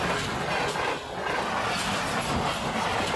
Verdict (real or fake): real